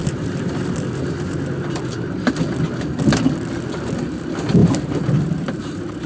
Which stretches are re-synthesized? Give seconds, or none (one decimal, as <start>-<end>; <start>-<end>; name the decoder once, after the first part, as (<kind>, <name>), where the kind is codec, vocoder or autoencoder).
0.0-1.4 (vocoder, BigVGAN v2); 4.6-6.1